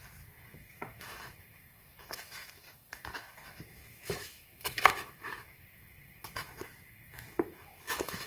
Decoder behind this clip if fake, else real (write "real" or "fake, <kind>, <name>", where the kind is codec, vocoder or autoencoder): fake, autoencoder, DAC-VAE